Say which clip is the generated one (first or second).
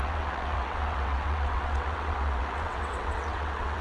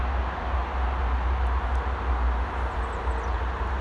first